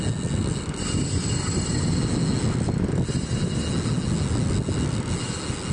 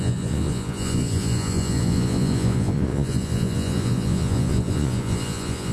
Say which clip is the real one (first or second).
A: first